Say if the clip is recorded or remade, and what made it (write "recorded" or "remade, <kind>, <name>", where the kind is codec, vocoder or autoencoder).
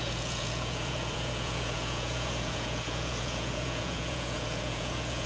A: remade, vocoder, Vocos